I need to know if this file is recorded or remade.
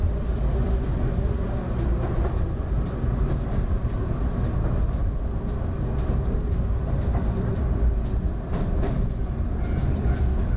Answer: recorded